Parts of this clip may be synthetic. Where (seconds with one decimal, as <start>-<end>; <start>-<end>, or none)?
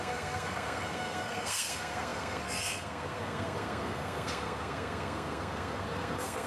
0.0-6.5